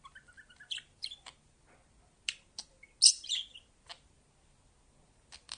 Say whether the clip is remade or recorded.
recorded